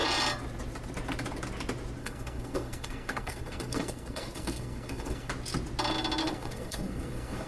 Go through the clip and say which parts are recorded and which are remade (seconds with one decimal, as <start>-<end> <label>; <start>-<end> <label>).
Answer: 0.0-2.0 recorded; 2.0-5.3 remade; 5.3-6.2 recorded; 6.2-7.5 remade